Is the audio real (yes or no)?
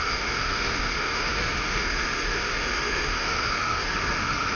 no